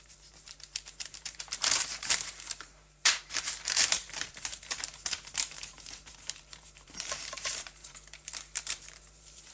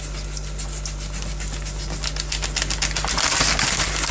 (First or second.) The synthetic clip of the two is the first